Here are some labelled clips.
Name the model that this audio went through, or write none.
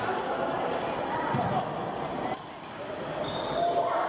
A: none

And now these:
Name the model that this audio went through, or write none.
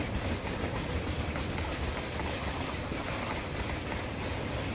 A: none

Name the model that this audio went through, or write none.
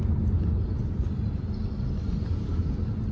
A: none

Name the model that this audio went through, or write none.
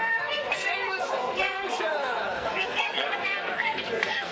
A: codec, SNAC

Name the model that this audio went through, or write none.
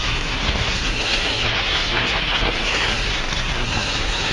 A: codec, SNAC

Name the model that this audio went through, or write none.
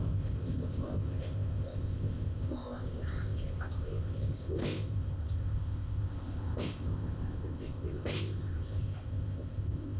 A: codec, ZipCodec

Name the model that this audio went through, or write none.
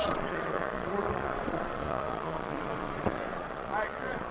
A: vocoder, Vocos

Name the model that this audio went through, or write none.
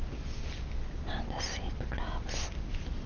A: none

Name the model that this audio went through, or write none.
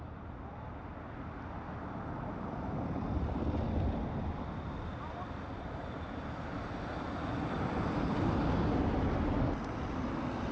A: none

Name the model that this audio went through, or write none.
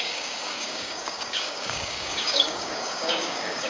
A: codec, DAC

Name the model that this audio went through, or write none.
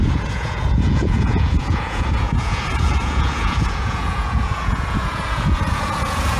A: vocoder, Vocos